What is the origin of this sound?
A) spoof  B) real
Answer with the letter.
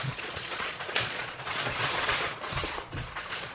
A